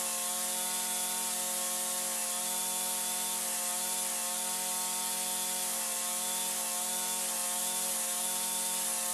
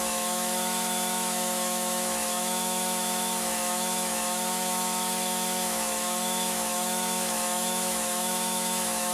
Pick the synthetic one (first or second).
second